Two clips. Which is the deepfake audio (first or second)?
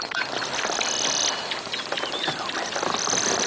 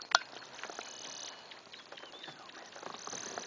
first